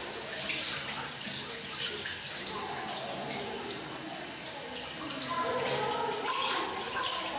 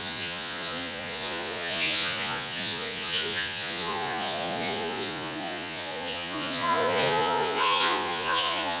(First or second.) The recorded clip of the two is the first